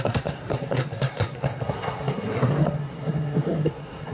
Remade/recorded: remade